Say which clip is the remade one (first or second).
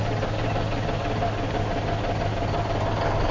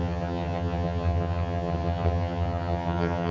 second